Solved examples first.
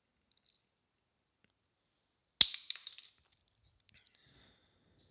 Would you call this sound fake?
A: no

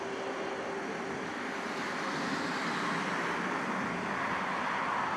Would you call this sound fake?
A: no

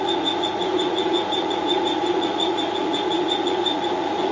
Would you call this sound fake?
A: yes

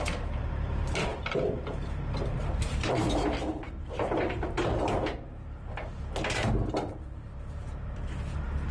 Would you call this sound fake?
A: yes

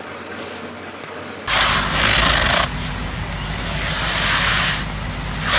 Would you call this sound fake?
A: no